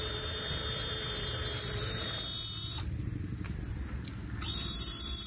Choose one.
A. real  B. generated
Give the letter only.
A